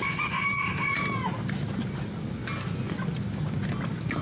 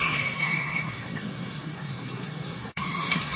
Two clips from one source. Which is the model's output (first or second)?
second